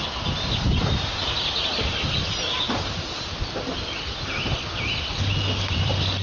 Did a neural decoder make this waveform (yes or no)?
no